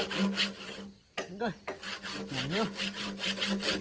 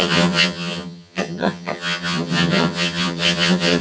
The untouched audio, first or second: first